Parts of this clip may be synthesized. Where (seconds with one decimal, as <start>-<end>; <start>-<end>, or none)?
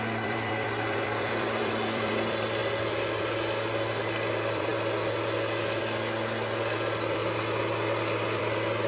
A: 0.0-2.6; 3.2-4.7; 5.8-7.2; 8.4-8.9